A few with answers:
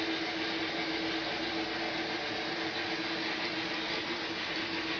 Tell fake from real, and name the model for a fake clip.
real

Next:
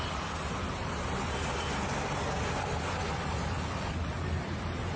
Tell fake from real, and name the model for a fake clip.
real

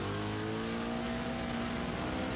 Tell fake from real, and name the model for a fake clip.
real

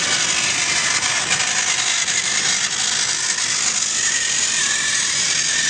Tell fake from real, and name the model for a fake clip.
real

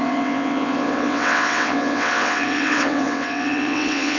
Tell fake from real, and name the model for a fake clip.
fake, vocoder, WaveNeXt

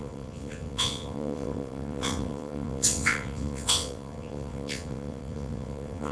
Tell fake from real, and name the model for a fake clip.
fake, vocoder, WaveNeXt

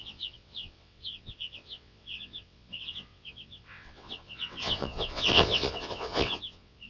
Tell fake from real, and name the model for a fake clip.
fake, vocoder, WaveNeXt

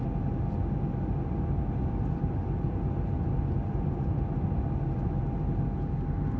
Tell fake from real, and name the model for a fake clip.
real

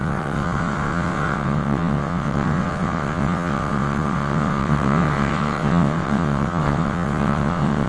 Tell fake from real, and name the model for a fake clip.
fake, vocoder, WaveNeXt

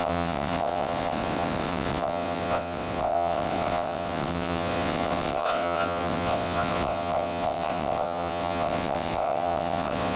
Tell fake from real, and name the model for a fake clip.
fake, vocoder, WaveNeXt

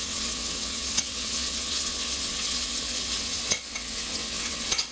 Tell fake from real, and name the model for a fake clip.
fake, vocoder, WaveNeXt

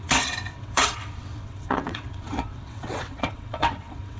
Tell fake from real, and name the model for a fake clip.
fake, vocoder, WaveNeXt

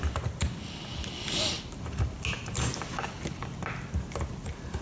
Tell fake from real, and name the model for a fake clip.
real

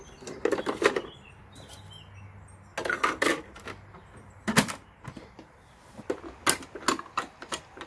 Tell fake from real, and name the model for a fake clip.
real